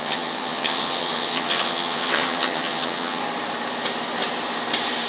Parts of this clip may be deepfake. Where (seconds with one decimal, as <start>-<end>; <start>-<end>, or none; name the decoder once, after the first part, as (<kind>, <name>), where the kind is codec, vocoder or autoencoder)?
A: 0.0-3.2 (vocoder, HiFi-GAN)